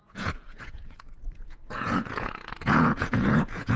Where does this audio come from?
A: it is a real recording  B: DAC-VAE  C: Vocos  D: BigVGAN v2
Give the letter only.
C